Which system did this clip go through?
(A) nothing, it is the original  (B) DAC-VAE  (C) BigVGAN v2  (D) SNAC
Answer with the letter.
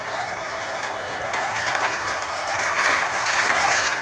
D